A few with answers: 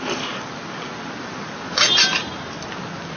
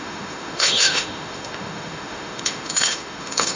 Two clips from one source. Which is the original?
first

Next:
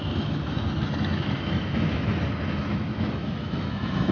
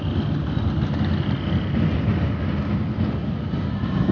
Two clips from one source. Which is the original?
second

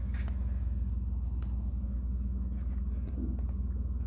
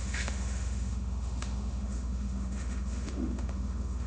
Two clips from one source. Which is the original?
first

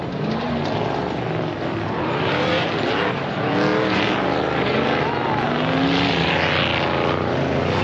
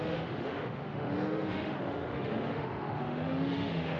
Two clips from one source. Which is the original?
first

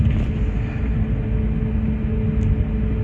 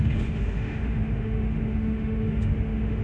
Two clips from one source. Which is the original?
first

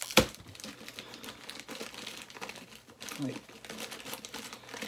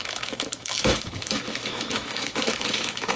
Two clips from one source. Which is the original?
first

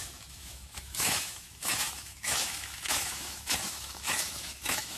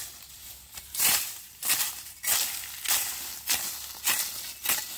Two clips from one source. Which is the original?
second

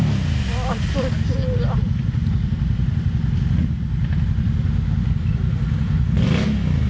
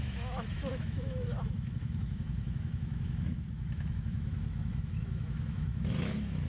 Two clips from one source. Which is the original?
first